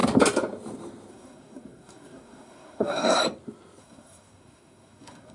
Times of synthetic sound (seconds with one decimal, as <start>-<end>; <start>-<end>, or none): 1.1-3.2; 3.8-5.3